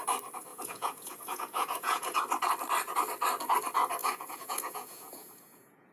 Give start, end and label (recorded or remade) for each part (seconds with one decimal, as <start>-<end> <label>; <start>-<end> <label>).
0.0-0.5 recorded; 0.5-2.2 remade; 2.2-4.0 recorded; 4.0-5.9 remade